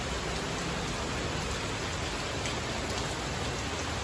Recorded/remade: recorded